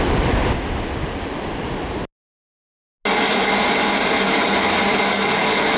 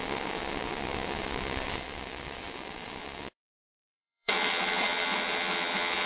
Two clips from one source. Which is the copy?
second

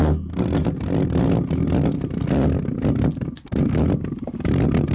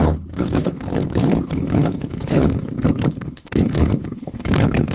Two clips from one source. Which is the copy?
second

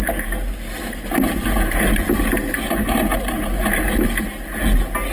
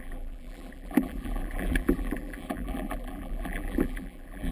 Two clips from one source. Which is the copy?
second